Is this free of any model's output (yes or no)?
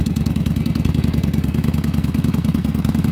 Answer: no